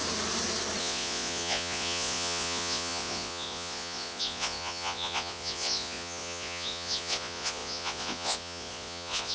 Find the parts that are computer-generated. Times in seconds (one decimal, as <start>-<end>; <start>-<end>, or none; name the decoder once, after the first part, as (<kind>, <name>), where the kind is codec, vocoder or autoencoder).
0.8-9.3 (vocoder, Vocos)